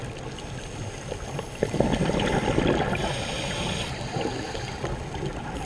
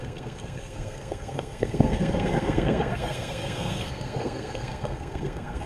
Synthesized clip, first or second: second